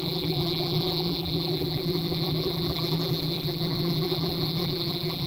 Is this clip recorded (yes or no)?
no